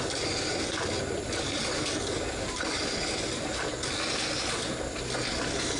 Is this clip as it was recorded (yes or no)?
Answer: yes